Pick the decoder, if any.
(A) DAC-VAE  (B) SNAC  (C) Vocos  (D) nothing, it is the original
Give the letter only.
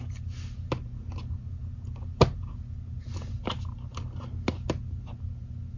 D